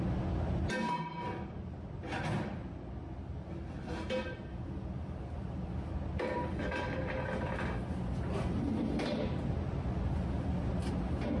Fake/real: real